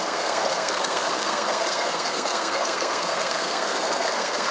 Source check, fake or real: fake